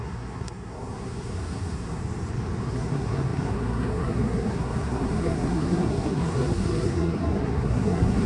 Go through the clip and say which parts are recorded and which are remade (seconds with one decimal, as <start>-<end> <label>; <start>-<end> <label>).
0.0-2.0 remade; 2.0-2.6 recorded; 2.6-8.3 remade